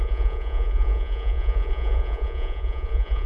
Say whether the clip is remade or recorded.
remade